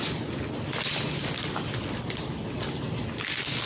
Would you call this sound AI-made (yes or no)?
no